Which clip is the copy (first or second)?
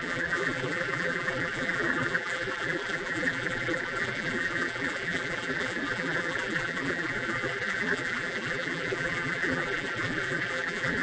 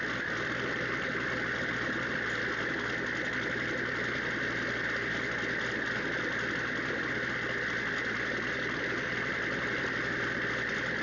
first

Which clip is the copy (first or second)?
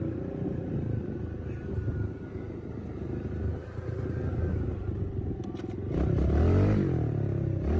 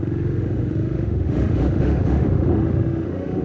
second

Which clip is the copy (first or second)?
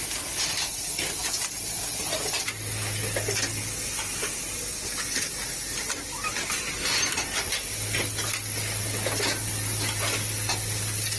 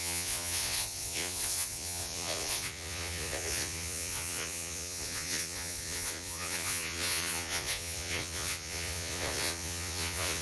second